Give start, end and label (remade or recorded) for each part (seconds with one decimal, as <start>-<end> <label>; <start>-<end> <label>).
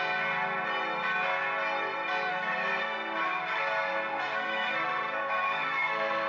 0.0-2.3 recorded; 2.3-6.3 remade